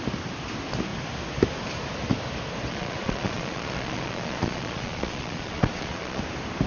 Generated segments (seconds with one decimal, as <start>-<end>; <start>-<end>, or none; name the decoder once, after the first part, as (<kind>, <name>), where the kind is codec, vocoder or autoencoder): 2.7-6.2 (vocoder, Vocos)